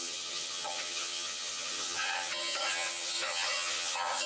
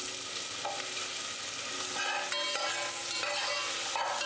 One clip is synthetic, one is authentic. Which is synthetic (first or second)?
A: first